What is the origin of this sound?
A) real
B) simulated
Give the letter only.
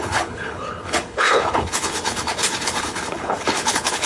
B